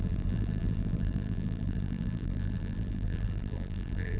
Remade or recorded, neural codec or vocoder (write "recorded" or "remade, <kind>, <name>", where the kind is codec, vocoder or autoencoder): remade, vocoder, BigVGAN v2